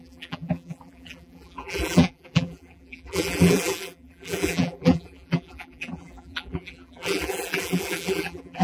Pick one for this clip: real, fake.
fake